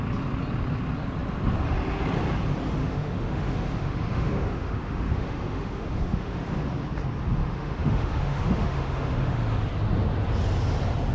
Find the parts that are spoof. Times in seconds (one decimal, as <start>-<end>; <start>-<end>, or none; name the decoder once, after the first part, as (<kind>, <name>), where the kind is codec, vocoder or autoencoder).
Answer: 2.8-6.6 (autoencoder, DAC-VAE); 7.4-9.4